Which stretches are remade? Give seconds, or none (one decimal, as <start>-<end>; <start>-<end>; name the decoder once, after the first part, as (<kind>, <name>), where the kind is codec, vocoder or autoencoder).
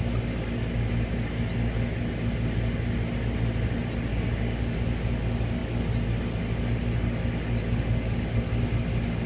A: 4.1-4.6 (codec, DAC)